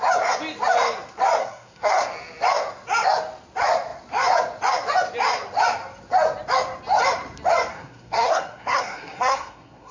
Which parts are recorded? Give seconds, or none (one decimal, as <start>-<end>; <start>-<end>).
0.0-1.4; 2.1-7.7